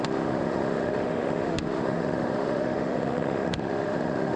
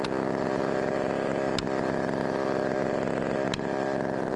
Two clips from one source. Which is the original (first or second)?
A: second